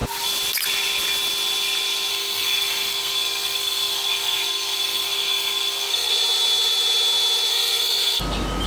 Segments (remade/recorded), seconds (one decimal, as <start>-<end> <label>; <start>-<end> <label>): 0.0-2.1 recorded; 2.1-6.1 remade; 6.1-7.5 recorded; 7.5-8.2 remade; 8.2-8.7 recorded